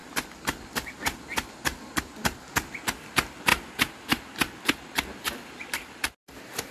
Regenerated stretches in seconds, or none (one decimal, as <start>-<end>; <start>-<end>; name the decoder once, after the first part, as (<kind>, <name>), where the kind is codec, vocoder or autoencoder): none